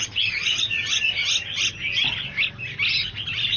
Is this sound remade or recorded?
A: recorded